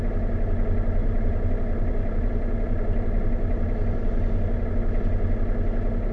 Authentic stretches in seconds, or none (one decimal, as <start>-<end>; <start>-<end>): 0.0-1.0; 4.7-6.1